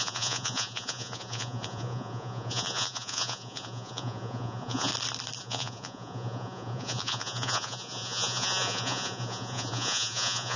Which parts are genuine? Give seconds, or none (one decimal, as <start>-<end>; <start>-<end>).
4.9-5.4